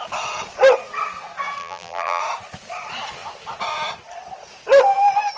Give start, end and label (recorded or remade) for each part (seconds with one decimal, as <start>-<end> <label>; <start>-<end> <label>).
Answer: 0.0-1.6 recorded; 1.6-2.2 remade; 2.2-5.4 recorded